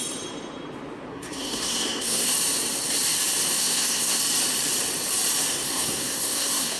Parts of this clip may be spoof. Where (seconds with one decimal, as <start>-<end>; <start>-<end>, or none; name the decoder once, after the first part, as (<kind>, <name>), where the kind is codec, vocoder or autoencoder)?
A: 1.1-2.3 (codec, SNAC); 3.6-4.2; 5.5-6.8